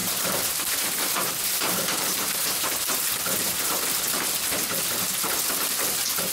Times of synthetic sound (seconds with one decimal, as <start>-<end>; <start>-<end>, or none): 0.0-3.8